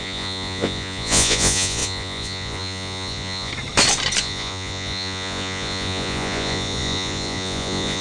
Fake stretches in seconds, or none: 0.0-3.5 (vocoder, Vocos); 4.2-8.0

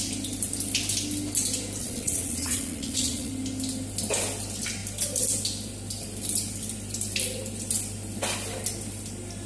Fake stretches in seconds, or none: 1.8-3.3 (vocoder, Vocos)